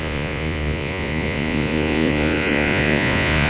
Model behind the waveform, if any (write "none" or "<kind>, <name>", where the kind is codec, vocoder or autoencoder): vocoder, Vocos